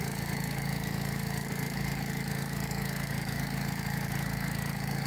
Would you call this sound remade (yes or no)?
yes